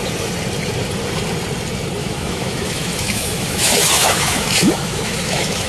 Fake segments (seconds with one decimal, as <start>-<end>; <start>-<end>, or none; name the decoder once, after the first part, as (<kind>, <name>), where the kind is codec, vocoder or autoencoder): 2.0-5.7 (autoencoder, DAC-VAE)